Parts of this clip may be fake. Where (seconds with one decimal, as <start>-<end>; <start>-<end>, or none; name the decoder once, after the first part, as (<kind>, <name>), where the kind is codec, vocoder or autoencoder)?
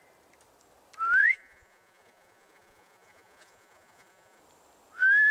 1.2-4.4 (vocoder, Vocos)